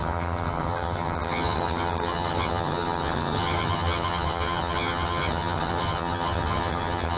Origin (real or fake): fake